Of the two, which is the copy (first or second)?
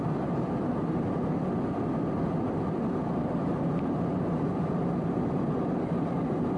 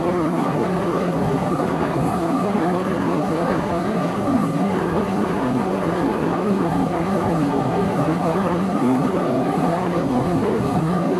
second